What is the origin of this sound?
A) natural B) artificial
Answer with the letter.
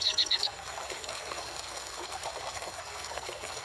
B